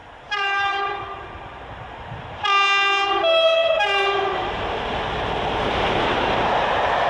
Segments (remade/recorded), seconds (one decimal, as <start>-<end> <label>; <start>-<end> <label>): 0.0-2.2 remade; 2.2-3.6 recorded; 3.6-7.1 remade